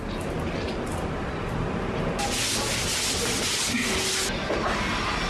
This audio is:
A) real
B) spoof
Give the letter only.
A